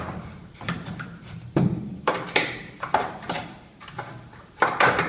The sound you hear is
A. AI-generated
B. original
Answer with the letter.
A